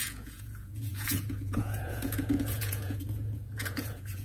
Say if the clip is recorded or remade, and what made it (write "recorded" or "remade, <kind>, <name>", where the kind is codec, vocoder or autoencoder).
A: remade, vocoder, Vocos